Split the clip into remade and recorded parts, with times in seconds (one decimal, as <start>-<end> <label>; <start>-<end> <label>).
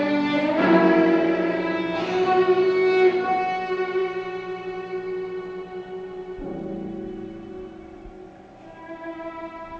0.0-4.0 remade; 4.0-5.4 recorded; 5.4-9.8 remade